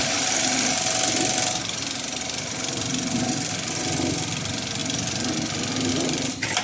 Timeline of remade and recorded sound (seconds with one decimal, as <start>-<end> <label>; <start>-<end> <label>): 0.0-4.8 remade; 4.8-5.9 recorded; 5.9-6.6 remade